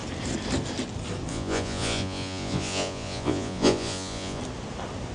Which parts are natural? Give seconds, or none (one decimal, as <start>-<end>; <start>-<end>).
0.0-1.3; 4.4-5.1